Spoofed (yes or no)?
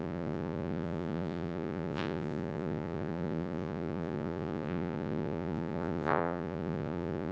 yes